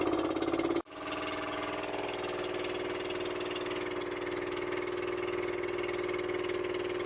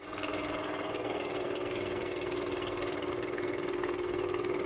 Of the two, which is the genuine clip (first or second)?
first